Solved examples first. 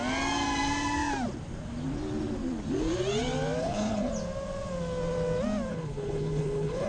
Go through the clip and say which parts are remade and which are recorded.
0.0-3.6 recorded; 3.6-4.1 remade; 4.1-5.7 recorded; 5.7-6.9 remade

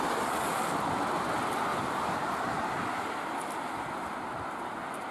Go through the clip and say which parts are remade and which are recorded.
0.0-5.1 recorded

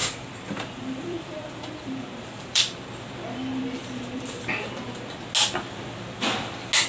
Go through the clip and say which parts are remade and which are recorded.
0.0-2.9 remade; 2.9-3.8 recorded; 3.8-4.4 remade; 4.4-6.9 recorded

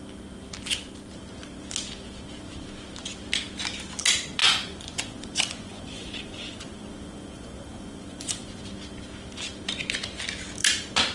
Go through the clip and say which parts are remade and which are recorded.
0.0-4.4 recorded; 4.4-8.6 remade; 8.6-11.1 recorded